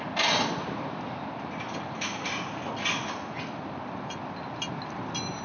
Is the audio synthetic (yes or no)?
no